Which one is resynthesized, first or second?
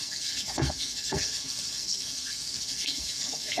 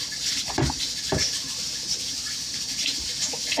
first